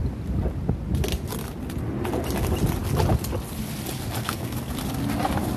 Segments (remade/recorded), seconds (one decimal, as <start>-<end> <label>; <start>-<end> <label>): 0.0-4.2 recorded; 4.2-4.7 remade; 4.7-5.6 recorded